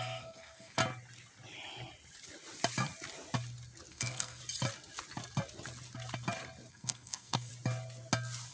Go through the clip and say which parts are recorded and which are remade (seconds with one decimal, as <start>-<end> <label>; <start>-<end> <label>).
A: 0.0-0.8 remade; 0.8-3.9 recorded; 3.9-4.4 remade; 4.4-6.7 recorded; 6.7-7.5 remade; 7.5-8.5 recorded